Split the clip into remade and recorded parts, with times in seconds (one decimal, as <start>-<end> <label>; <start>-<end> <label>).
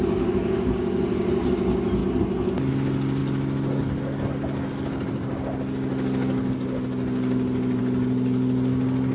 0.0-9.1 recorded